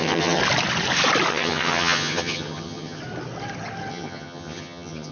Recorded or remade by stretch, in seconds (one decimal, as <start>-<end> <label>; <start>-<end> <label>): 0.0-0.4 remade; 0.4-1.3 recorded; 1.3-3.0 remade; 3.0-3.9 recorded; 3.9-5.1 remade